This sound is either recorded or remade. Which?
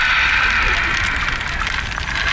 recorded